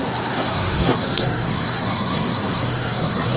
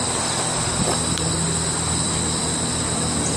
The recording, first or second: second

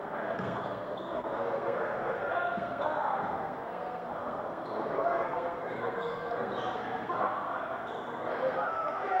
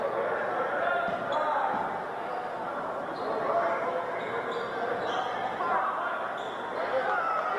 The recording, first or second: second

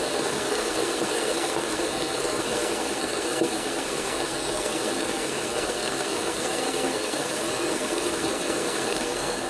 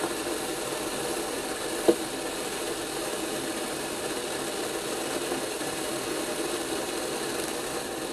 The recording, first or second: second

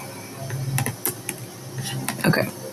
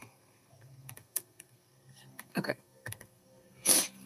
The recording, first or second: first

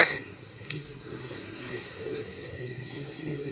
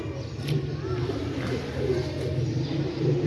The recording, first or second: second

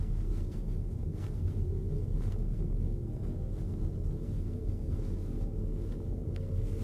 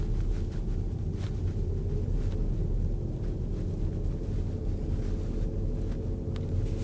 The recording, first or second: second